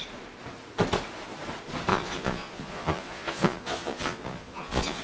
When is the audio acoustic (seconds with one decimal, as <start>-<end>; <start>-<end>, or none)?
0.0-1.9

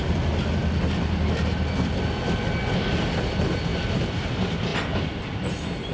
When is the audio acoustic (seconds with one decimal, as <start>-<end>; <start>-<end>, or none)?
0.0-3.7; 4.3-4.7; 5.5-5.9

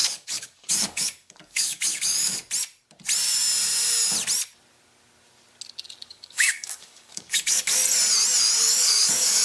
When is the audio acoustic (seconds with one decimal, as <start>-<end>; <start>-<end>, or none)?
2.4-6.1; 7.8-8.6